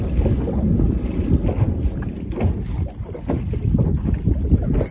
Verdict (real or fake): real